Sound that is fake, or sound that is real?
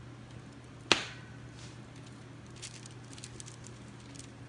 real